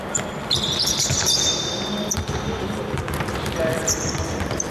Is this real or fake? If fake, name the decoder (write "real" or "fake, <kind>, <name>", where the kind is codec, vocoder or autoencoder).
fake, vocoder, BigVGAN v2